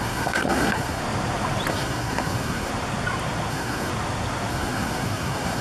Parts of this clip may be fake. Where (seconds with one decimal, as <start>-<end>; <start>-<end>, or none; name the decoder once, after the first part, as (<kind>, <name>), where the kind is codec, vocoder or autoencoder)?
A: 0.0-1.0 (codec, SNAC); 1.7-2.7; 3.5-3.9; 4.5-5.6